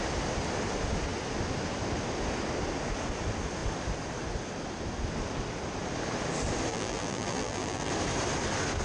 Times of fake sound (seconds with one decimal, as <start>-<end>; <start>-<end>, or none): 6.7-7.9